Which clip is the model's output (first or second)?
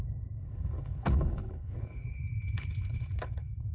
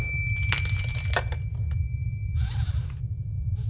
first